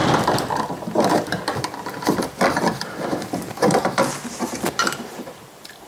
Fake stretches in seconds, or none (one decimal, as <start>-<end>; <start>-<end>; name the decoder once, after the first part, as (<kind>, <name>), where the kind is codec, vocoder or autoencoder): 0.0-0.6 (vocoder, BigVGAN v2); 1.5-3.1